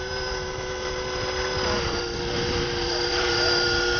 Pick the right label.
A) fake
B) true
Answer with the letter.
A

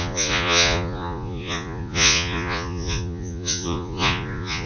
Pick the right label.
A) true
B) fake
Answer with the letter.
B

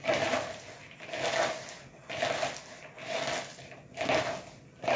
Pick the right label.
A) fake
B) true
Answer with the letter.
B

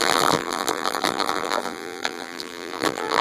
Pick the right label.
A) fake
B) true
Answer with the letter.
A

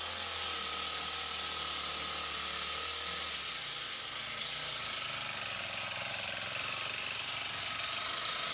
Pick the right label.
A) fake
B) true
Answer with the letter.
B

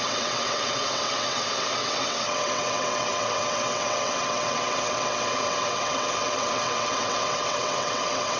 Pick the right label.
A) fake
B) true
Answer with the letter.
A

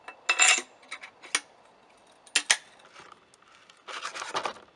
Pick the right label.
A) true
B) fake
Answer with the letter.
A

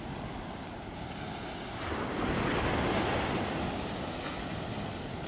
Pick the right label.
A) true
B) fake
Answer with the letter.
A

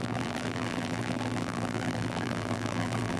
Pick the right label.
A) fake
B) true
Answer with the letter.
A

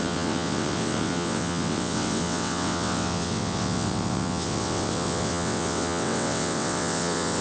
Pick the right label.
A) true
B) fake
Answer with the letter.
B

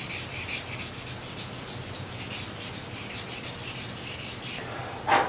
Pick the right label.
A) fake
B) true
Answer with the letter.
B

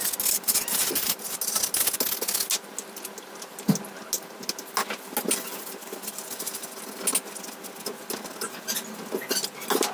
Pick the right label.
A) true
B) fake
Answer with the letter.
A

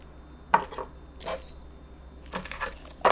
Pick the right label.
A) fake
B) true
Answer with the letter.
B